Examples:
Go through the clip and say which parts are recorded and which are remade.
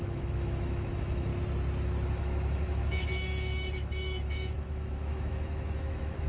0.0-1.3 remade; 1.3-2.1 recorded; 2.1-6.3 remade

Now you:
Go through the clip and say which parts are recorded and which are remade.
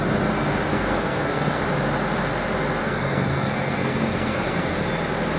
0.0-0.7 recorded; 0.7-1.6 remade; 1.6-2.8 recorded; 2.8-4.7 remade; 4.7-5.4 recorded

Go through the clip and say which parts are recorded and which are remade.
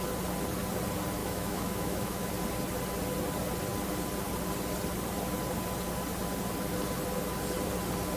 0.0-1.2 recorded; 1.2-2.3 remade; 2.3-8.2 recorded